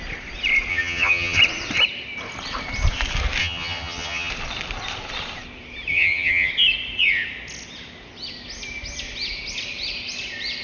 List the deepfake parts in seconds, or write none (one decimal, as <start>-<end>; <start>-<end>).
0.7-1.4; 3.4-4.3; 5.9-6.5

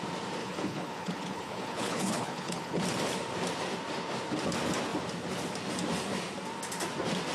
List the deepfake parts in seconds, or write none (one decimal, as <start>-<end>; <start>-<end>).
0.4-2.8